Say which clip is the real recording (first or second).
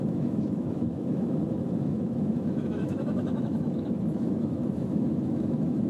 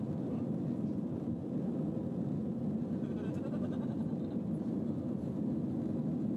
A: second